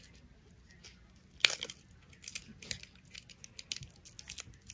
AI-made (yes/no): no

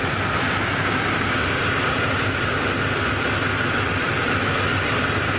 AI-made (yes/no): no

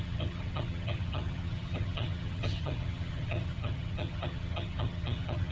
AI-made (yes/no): yes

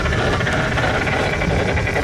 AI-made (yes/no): no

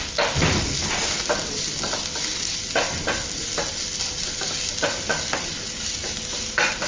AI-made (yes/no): no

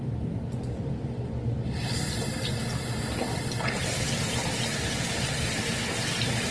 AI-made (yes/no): no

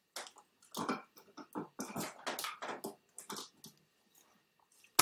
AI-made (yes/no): no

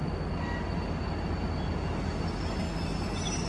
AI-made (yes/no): no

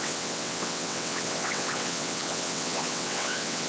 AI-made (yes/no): yes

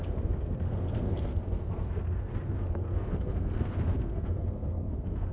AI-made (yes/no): yes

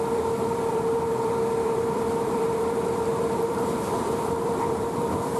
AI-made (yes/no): yes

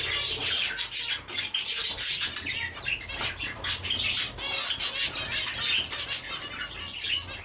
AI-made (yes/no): no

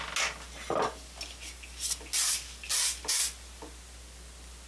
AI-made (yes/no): no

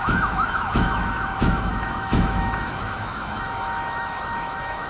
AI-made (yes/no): yes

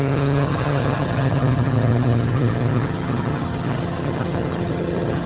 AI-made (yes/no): yes